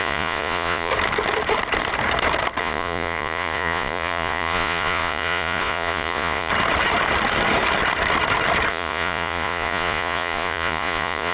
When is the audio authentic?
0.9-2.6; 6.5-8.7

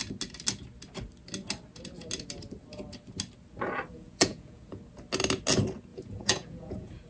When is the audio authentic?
0.0-3.9; 4.8-5.9

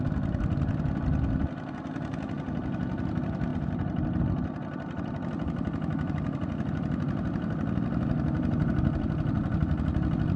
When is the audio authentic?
0.0-10.4